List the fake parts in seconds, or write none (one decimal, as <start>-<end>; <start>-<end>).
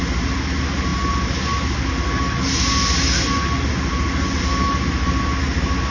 none